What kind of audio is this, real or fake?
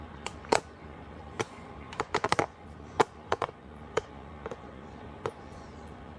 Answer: fake